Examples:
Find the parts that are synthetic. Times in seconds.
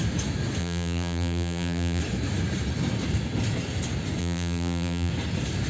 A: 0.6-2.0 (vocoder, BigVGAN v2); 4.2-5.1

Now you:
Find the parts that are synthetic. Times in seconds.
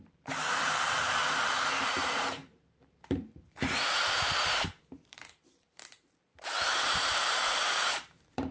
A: 0.0-1.2 (vocoder, BigVGAN v2); 1.8-8.5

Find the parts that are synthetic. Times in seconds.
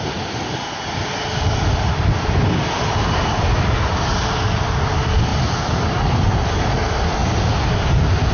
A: 5.3-6.3 (vocoder, BigVGAN v2)